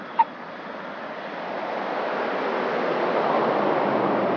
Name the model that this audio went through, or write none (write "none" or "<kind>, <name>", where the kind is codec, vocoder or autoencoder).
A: none